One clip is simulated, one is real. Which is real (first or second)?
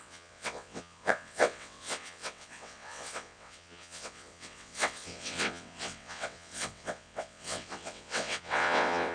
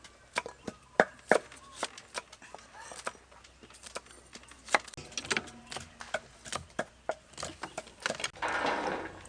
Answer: second